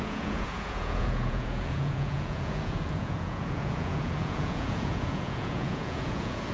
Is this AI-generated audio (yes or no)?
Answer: yes